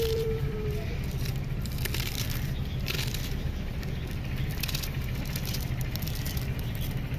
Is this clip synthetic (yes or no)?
yes